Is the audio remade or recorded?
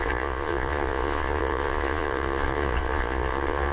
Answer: remade